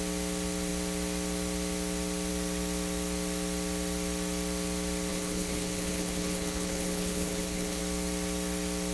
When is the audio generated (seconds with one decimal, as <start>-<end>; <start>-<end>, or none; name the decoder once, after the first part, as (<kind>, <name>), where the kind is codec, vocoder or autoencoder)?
5.1-7.8 (codec, HILCodec)